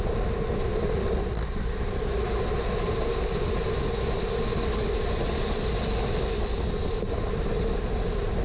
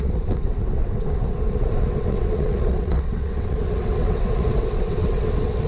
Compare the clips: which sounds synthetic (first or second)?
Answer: second